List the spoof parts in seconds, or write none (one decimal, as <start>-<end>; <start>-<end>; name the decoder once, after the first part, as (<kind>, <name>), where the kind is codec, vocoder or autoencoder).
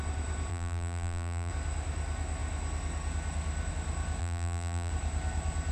0.5-1.5 (vocoder, BigVGAN v2); 4.2-4.9